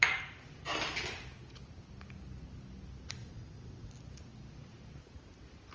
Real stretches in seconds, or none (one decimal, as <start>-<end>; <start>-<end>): 0.0-3.2; 3.9-5.7